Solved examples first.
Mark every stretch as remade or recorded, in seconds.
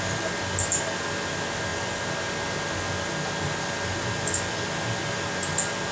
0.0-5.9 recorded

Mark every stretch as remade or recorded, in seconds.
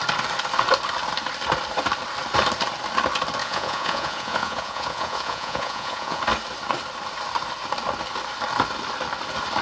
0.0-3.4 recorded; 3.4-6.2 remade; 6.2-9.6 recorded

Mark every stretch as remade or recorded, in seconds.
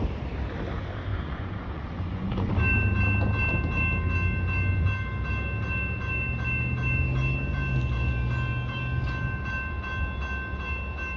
0.0-1.1 recorded; 1.1-2.5 remade; 2.5-11.2 recorded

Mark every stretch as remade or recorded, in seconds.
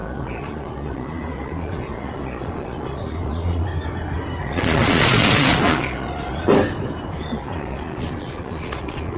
0.0-3.7 remade; 3.7-4.4 recorded; 4.4-6.5 remade; 6.5-7.2 recorded; 7.2-9.2 remade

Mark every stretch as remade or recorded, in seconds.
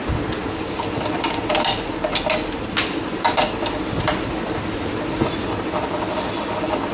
0.0-6.9 recorded